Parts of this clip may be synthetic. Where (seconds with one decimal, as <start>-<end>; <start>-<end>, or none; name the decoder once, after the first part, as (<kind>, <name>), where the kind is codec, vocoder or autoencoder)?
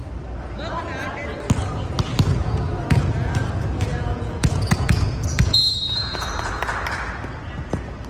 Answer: 2.4-6.6 (vocoder, Vocos)